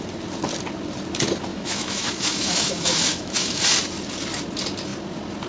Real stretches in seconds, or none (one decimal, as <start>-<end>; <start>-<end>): 0.0-1.5; 3.6-5.5